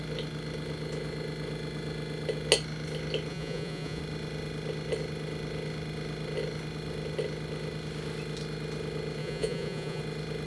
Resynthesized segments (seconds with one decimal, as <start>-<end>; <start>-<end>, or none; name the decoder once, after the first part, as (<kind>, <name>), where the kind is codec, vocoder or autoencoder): 3.3-4.0 (vocoder, Vocos); 9.2-10.0